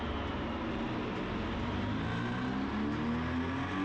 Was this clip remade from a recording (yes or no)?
no